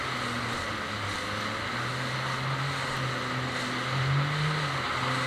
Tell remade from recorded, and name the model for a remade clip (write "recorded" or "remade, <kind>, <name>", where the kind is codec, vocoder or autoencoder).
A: recorded